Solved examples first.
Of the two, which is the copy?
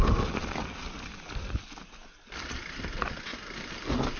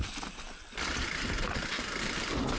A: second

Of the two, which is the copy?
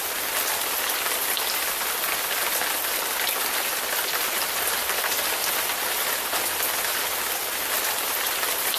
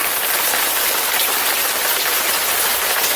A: second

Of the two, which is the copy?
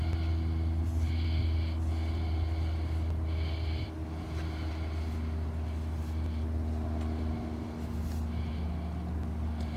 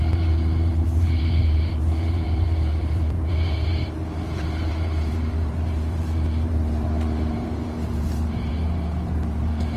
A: second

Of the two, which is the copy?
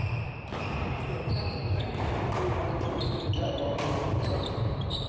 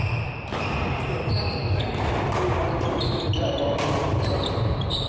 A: first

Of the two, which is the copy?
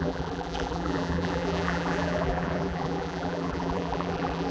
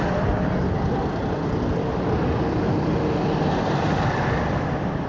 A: first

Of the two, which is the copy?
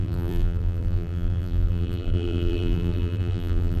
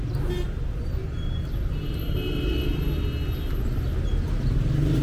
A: first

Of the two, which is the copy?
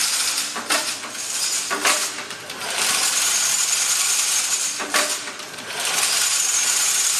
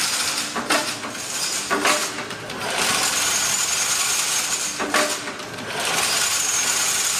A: first